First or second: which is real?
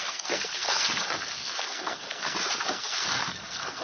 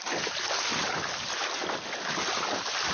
second